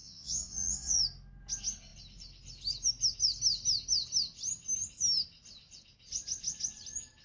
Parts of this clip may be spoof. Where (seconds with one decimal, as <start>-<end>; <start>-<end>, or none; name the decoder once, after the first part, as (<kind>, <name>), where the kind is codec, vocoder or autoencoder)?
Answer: 0.0-1.0 (vocoder, Vocos)